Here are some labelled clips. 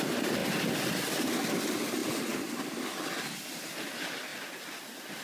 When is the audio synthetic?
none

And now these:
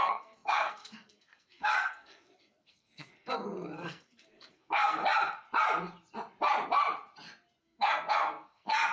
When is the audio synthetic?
0.0-5.0 (codec, SNAC); 7.6-8.9

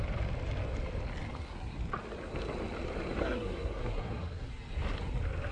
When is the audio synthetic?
3.2-4.5 (codec, SNAC)